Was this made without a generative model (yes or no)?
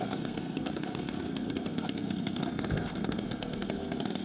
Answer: no